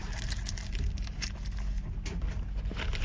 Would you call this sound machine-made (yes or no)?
no